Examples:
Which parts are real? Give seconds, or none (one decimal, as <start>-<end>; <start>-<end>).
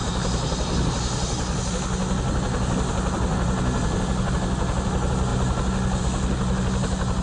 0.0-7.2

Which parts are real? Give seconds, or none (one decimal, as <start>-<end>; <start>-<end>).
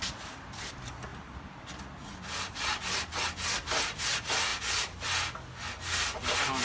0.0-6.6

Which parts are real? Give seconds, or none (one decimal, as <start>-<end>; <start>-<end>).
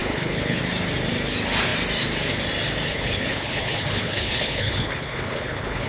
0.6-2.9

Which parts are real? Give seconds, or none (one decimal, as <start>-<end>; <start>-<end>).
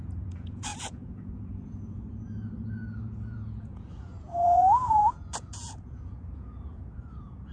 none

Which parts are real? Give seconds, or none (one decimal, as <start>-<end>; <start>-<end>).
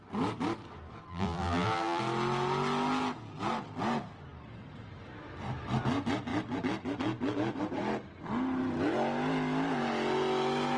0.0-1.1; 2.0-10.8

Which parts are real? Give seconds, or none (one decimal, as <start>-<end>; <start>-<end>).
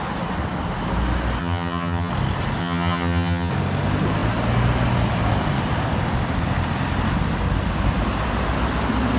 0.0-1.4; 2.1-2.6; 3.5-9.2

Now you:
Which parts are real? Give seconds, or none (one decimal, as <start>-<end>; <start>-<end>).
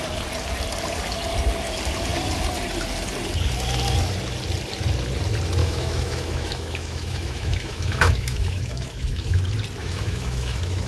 0.0-5.6; 9.4-9.8